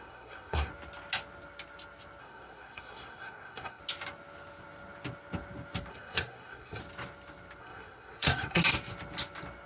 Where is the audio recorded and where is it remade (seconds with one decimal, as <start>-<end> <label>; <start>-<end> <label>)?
0.0-0.7 remade; 0.7-2.2 recorded; 2.2-3.8 remade; 3.8-5.9 recorded; 5.9-6.8 remade; 6.8-7.6 recorded; 7.6-8.6 remade; 8.6-9.7 recorded